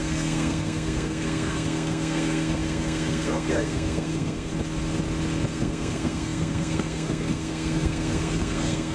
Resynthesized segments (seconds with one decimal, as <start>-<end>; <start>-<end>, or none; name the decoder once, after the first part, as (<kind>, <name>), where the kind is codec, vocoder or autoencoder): 0.0-4.5 (codec, SNAC); 5.5-8.9